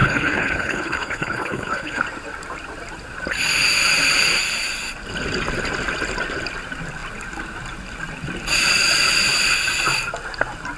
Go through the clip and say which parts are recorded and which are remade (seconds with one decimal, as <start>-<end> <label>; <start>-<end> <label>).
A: 0.0-2.0 remade; 2.0-10.8 recorded